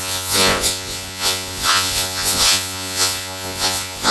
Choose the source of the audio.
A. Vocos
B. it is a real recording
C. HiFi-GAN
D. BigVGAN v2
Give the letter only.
A